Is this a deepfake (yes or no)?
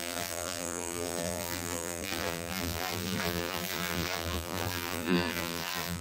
yes